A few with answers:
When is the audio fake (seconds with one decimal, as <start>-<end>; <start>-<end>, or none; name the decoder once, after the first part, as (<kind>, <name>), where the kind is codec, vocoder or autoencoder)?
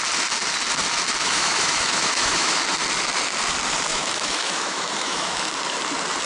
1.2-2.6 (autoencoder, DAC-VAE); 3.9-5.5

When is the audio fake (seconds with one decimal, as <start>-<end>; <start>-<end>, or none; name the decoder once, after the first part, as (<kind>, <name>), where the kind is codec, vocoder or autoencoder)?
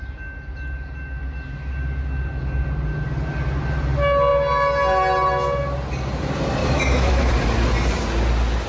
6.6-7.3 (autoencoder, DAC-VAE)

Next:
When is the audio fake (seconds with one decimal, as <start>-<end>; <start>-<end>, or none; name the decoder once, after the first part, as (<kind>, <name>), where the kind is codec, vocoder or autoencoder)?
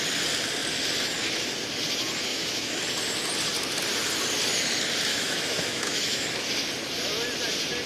2.3-2.8 (autoencoder, DAC-VAE); 5.1-6.5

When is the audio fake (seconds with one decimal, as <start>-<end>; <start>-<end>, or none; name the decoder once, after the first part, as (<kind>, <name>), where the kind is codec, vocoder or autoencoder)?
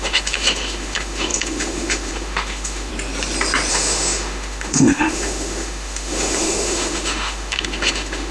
0.0-2.9 (autoencoder, DAC-VAE); 3.7-8.3